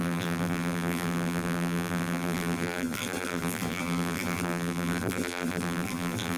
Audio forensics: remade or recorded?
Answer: remade